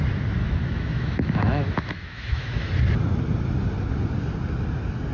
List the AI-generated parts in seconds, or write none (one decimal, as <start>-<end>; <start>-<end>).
0.4-2.7